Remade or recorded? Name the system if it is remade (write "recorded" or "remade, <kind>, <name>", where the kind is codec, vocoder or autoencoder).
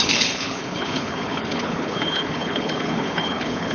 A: remade, codec, HILCodec